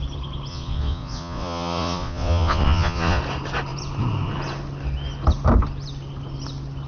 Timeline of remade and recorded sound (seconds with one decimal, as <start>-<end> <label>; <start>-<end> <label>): 0.0-0.5 recorded; 0.5-3.2 remade; 3.2-6.9 recorded